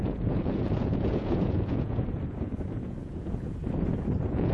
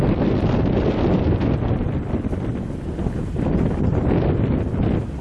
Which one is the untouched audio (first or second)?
second